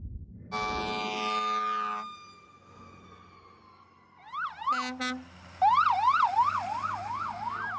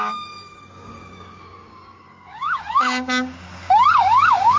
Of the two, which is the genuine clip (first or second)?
first